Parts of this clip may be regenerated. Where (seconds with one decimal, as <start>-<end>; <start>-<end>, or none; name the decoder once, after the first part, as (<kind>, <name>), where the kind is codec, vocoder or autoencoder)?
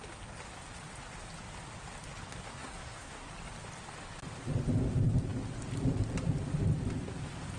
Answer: 2.5-3.3 (codec, SNAC)